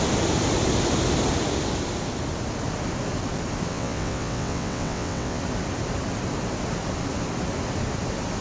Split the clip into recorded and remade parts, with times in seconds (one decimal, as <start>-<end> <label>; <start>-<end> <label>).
0.0-3.7 recorded; 3.7-5.4 remade; 5.4-8.4 recorded